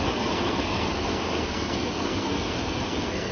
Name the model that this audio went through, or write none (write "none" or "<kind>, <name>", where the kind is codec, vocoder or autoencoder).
codec, SNAC